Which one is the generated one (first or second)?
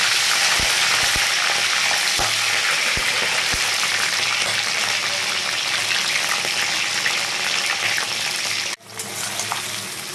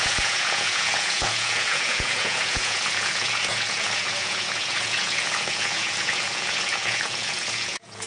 second